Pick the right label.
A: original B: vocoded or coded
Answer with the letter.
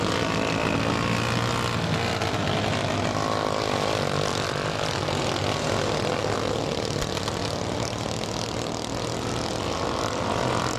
A